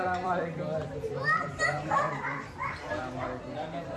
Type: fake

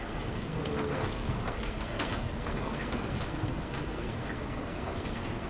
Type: fake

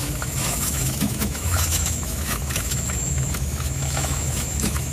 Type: fake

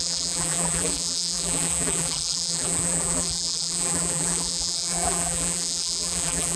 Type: fake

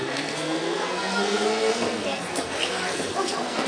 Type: fake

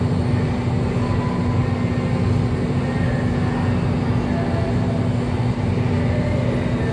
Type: real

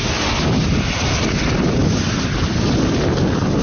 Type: real